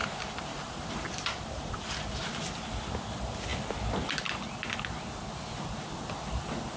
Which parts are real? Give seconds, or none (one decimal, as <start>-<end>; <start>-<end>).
1.8-6.8

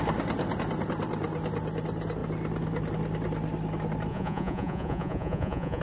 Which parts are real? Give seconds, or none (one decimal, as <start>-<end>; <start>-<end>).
0.0-4.1

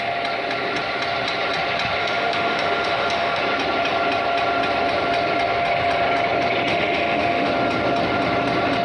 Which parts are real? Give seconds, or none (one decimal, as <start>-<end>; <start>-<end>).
0.0-2.0; 3.4-6.7; 7.5-8.8

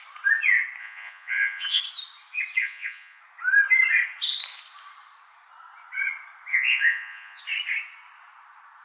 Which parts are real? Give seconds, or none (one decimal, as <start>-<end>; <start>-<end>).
0.0-0.8; 1.8-2.6; 3.2-6.5; 7.4-8.8

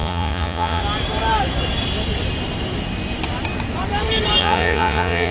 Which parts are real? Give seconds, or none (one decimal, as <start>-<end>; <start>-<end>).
0.8-4.4

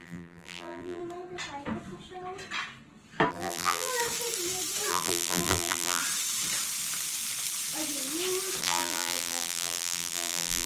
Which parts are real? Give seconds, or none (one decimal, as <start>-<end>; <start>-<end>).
1.0-3.3; 3.9-4.9; 6.0-8.6

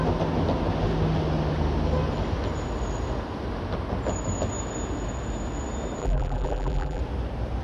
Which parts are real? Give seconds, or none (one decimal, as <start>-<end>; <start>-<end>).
0.0-6.0; 7.0-7.6